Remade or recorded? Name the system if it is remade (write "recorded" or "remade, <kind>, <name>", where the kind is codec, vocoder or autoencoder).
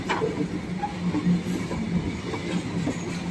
recorded